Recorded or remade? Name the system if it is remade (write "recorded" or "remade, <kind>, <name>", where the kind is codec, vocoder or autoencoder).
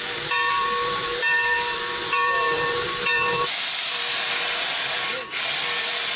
remade, vocoder, BigVGAN v2